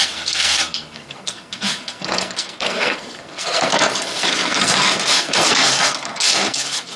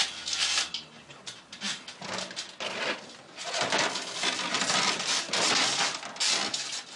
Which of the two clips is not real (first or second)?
first